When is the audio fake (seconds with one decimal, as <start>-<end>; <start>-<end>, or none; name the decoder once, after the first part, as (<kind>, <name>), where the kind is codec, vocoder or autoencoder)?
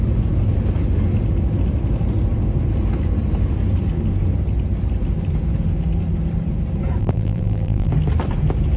7.0-7.9 (vocoder, BigVGAN v2)